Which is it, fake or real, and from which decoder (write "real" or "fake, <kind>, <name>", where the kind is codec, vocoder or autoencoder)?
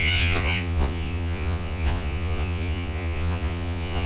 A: fake, vocoder, Vocos